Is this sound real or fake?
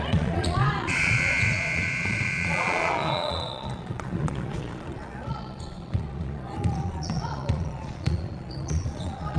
fake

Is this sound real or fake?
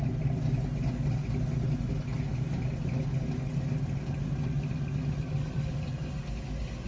real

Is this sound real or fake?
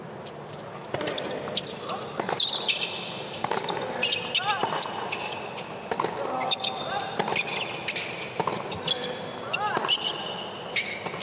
real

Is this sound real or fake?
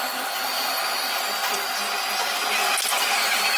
real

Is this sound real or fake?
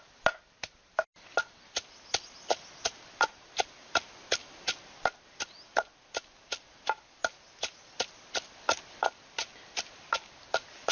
real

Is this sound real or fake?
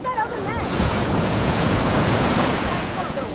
fake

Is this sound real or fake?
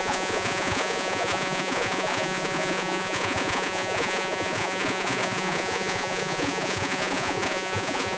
fake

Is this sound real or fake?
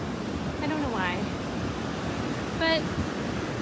real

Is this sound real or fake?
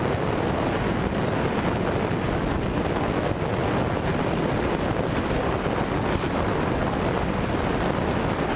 real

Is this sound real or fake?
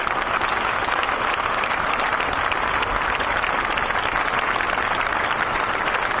real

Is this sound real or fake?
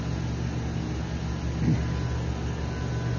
real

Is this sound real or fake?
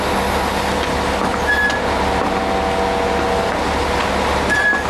real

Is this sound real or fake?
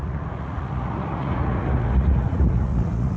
fake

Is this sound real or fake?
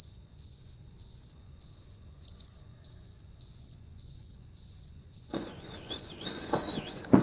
fake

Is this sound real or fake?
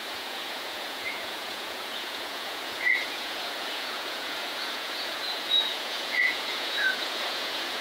fake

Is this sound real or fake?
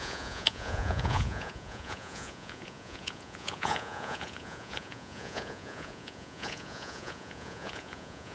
fake